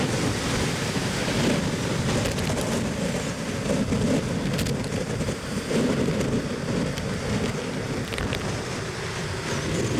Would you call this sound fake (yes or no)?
no